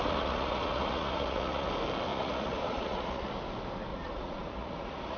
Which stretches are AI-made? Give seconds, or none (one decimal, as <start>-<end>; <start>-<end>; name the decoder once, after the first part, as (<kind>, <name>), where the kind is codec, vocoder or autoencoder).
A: 0.0-1.7 (vocoder, Vocos); 2.1-3.3; 3.9-5.2